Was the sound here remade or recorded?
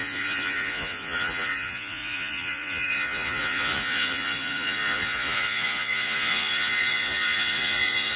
remade